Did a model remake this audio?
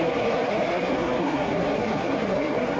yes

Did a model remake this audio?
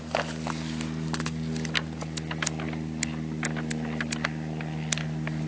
no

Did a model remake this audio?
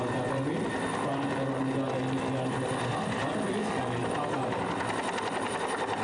no